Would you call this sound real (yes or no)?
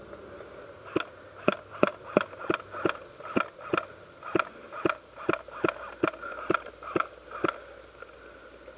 yes